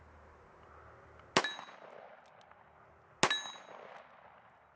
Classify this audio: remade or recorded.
recorded